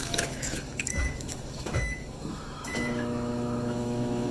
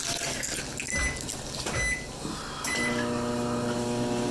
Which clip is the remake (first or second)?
first